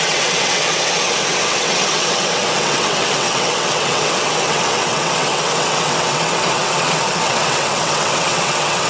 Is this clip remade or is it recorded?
remade